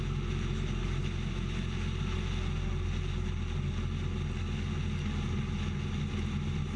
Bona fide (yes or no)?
yes